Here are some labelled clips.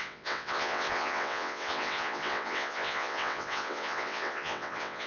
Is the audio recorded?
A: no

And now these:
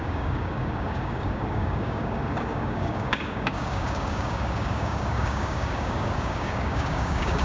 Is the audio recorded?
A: no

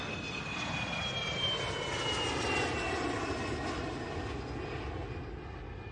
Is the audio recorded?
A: yes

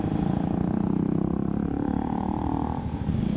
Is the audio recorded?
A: no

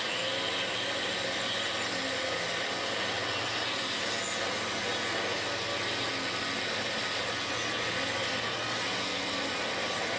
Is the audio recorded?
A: yes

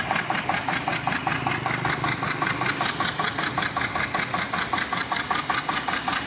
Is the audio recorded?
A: yes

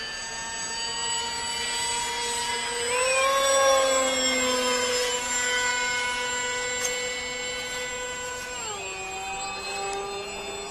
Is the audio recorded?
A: yes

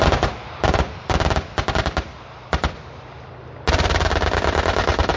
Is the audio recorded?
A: yes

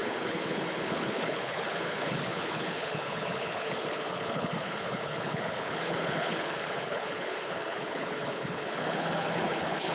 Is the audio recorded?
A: no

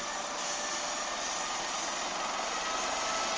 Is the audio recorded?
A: yes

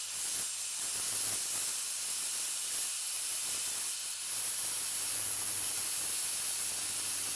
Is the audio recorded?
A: yes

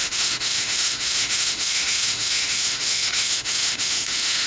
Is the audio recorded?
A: no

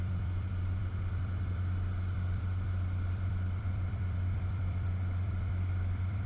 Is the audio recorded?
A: no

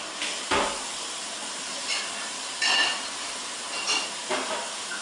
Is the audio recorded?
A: no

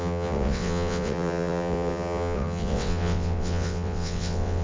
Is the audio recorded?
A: no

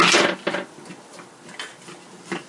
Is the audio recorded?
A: yes